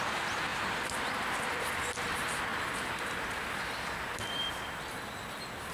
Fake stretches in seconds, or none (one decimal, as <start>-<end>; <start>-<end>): 0.5-1.1